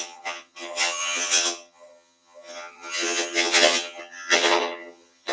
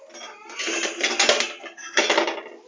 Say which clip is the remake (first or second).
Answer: first